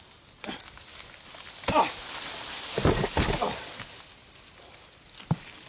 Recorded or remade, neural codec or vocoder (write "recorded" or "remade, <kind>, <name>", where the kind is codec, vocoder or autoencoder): recorded